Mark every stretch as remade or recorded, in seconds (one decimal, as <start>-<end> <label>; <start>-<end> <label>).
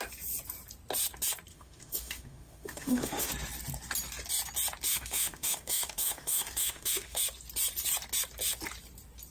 0.0-1.5 recorded; 1.5-3.3 remade; 3.3-4.9 recorded; 4.9-7.2 remade; 7.2-9.3 recorded